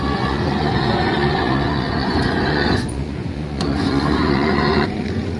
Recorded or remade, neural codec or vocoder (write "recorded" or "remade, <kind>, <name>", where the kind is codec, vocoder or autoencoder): remade, vocoder, Vocos